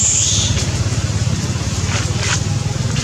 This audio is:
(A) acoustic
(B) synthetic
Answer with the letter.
A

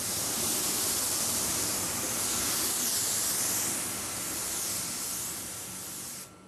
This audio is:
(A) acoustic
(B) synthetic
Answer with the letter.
B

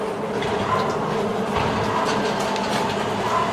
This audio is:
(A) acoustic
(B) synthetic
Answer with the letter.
A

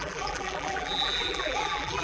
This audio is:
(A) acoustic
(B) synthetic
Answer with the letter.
B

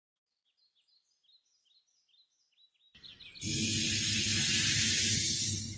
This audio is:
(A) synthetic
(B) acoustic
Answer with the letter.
B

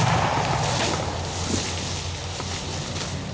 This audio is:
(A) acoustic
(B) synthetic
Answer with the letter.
A